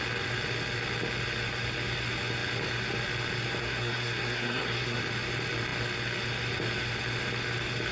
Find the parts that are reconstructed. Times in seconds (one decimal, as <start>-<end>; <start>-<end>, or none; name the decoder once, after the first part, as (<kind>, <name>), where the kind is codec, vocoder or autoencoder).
3.6-5.0 (codec, SNAC)